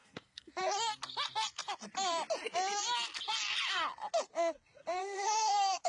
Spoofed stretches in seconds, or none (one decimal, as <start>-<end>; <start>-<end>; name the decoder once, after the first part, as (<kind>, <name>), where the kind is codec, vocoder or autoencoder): 0.0-0.6 (codec, SNAC); 5.0-5.9